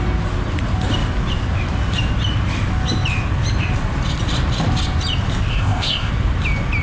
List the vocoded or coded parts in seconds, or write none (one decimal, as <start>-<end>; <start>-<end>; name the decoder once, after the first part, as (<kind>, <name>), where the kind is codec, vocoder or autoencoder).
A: 5.5-6.1 (codec, ZipCodec)